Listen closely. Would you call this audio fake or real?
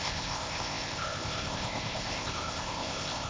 fake